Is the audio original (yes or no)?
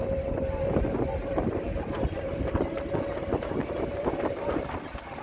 no